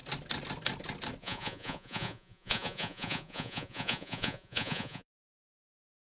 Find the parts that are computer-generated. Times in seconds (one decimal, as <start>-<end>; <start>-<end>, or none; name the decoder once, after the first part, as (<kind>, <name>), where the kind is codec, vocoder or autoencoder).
1.2-6.0 (vocoder, Vocos)